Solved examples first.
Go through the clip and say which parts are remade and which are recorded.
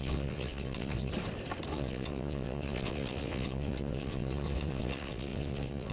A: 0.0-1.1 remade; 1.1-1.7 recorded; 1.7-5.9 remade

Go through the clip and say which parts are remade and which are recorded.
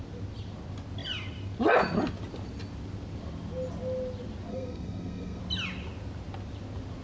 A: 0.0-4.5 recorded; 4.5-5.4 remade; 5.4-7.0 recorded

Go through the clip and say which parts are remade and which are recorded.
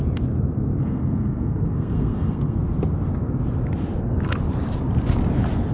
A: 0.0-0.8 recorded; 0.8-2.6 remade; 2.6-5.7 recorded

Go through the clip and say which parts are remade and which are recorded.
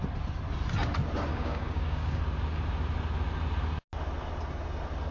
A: 0.0-1.3 recorded; 1.3-2.2 remade; 2.2-5.1 recorded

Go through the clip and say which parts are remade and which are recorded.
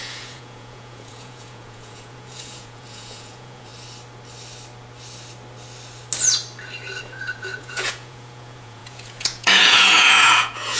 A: 0.0-3.7 remade; 3.7-7.0 recorded; 7.0-10.8 remade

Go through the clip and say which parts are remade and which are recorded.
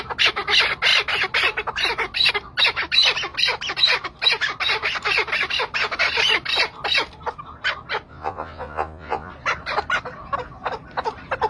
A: 0.0-8.1 recorded; 8.1-9.3 remade; 9.3-11.5 recorded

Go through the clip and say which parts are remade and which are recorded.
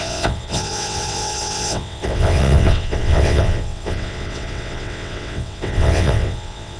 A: 0.0-6.8 remade